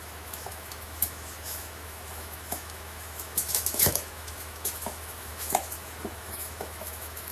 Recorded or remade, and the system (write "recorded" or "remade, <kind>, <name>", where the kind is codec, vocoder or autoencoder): remade, autoencoder, DAC-VAE